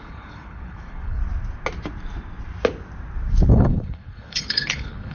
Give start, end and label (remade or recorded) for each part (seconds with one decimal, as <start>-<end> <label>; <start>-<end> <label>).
0.0-1.2 remade; 1.2-3.5 recorded; 3.5-5.1 remade